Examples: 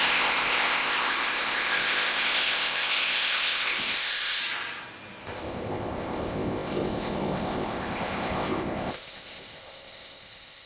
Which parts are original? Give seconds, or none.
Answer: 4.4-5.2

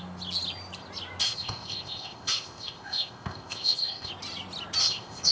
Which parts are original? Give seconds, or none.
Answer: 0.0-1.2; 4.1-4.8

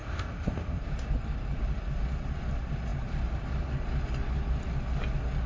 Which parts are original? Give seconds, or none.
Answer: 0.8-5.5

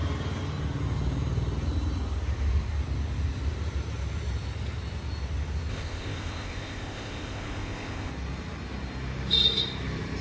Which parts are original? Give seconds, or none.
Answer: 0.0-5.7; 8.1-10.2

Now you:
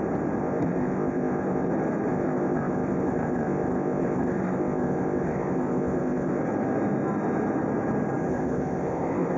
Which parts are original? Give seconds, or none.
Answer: 0.0-0.4; 1.7-2.1; 6.4-8.3

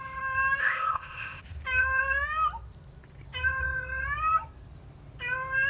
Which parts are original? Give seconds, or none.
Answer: 0.0-0.6; 1.4-5.7

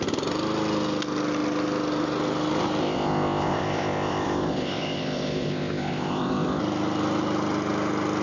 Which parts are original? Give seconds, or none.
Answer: 0.0-2.8; 6.6-8.2